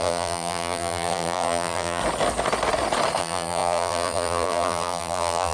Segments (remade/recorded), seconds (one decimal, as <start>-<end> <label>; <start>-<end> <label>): 0.0-2.0 remade; 2.0-3.2 recorded; 3.2-5.5 remade